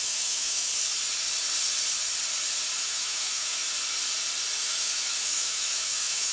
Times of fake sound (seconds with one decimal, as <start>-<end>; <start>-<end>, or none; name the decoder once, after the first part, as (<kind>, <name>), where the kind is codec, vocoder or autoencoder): 0.0-0.7 (autoencoder, DAC-VAE); 2.8-3.6; 4.6-6.3